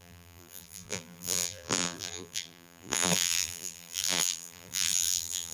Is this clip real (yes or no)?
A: no